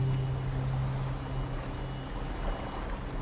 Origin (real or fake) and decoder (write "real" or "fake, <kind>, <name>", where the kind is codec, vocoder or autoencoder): real